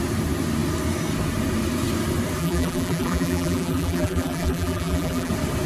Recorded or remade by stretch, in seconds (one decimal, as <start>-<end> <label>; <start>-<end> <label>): 0.0-2.4 recorded; 2.4-5.3 remade; 5.3-5.7 recorded